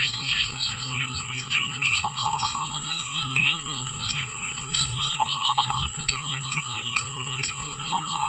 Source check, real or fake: fake